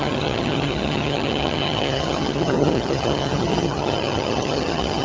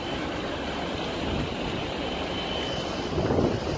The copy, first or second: first